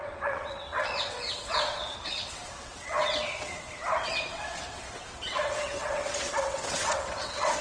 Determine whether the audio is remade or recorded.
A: remade